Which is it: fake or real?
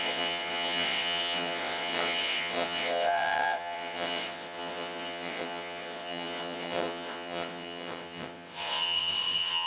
fake